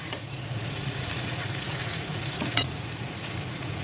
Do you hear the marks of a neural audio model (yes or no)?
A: yes